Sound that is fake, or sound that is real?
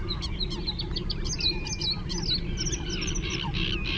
real